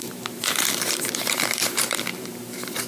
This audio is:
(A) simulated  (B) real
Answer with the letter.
A